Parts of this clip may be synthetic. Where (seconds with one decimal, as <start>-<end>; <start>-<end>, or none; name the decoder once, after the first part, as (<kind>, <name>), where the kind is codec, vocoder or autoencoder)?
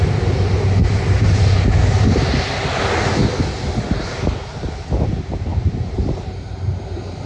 0.8-1.4 (vocoder, BigVGAN v2); 5.5-7.3